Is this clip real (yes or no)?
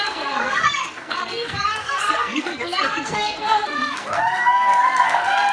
no